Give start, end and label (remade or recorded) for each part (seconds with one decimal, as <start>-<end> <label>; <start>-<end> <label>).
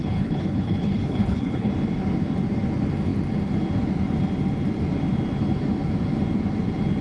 0.0-1.7 remade; 1.7-7.0 recorded